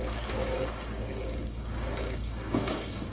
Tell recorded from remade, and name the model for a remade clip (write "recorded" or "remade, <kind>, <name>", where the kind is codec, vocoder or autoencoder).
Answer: remade, codec, DAC